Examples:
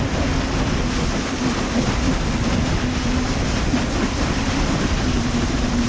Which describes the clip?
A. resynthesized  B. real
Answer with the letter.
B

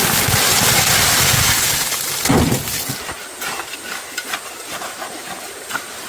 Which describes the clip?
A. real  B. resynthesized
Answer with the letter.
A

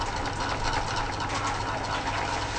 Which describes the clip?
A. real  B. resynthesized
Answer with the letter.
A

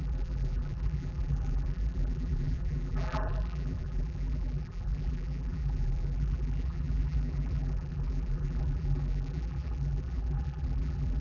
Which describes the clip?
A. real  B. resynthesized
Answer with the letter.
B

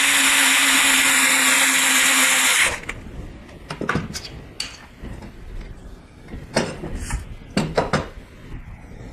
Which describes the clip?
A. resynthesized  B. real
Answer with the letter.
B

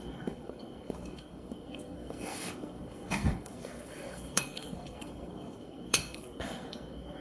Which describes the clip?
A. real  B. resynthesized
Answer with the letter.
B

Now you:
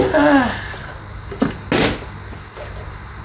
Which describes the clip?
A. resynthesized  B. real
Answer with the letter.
B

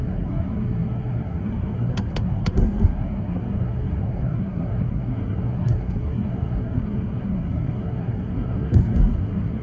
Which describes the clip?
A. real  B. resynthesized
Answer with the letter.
B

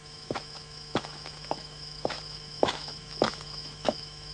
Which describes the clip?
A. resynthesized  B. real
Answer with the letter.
A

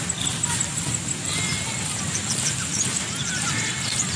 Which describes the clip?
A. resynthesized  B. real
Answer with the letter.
B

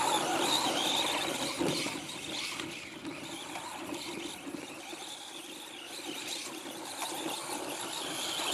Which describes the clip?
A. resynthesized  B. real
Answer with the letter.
B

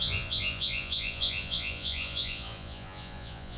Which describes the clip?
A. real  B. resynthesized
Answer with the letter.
B